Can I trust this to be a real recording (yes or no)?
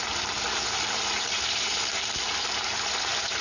no